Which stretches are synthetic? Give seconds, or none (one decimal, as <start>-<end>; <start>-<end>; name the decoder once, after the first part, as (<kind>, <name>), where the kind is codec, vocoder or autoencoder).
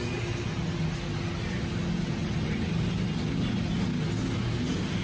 2.2-3.0 (vocoder, BigVGAN v2)